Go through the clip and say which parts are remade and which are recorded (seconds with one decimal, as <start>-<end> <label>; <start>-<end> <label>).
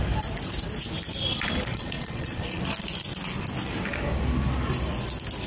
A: 0.0-1.7 recorded; 1.7-2.6 remade; 2.6-5.5 recorded